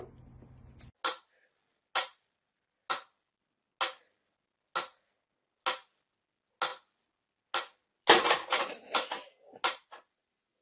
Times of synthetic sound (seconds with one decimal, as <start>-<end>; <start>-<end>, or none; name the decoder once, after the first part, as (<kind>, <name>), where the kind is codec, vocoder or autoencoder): none